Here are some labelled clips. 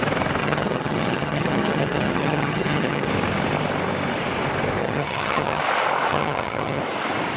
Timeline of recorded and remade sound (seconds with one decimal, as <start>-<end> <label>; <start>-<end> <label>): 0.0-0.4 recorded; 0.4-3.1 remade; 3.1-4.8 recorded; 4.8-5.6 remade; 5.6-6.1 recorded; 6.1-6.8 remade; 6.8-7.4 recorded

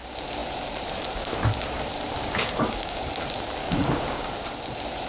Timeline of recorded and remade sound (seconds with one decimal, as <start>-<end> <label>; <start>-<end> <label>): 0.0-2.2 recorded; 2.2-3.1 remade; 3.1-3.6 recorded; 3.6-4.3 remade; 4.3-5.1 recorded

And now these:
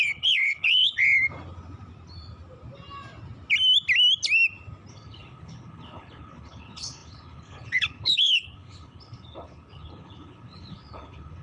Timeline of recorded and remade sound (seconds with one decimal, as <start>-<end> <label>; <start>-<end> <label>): 0.0-1.0 remade; 1.0-4.9 recorded; 4.9-11.4 remade

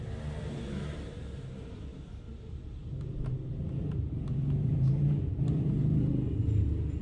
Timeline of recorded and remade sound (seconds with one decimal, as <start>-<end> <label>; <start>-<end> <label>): 0.0-7.0 recorded

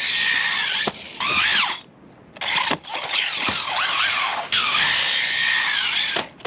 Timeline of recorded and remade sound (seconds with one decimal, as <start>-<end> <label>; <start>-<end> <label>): 0.0-4.2 recorded; 4.2-4.9 remade; 4.9-6.5 recorded